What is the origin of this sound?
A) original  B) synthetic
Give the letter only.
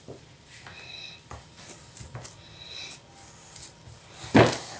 A